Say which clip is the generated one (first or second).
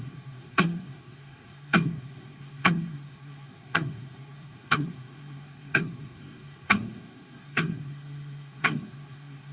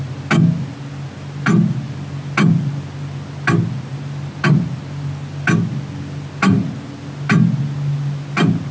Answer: first